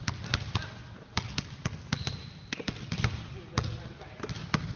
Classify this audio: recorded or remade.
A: recorded